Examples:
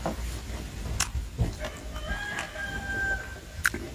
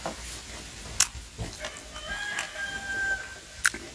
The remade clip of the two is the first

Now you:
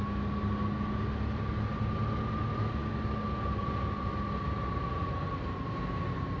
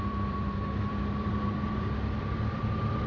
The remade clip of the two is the second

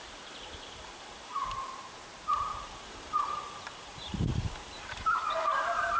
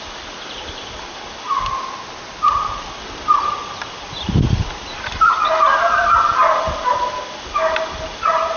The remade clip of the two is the first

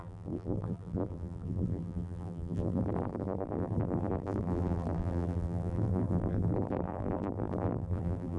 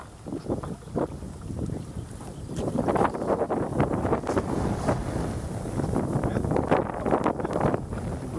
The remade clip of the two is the first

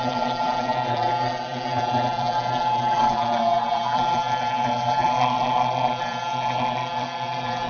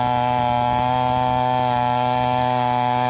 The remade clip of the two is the first